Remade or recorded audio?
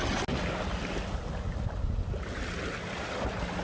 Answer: recorded